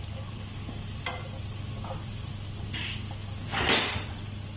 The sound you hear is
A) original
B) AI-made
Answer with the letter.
A